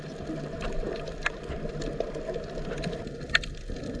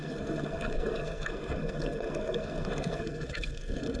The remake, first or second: second